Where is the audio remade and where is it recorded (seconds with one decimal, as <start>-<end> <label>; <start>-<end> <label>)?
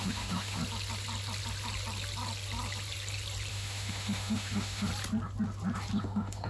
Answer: 0.0-0.6 remade; 0.6-3.5 recorded; 3.5-4.9 remade; 4.9-6.0 recorded; 6.0-6.5 remade